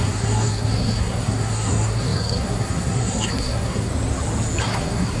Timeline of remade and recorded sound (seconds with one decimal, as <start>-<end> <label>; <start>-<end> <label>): 0.0-3.9 remade; 3.9-4.6 recorded; 4.6-5.2 remade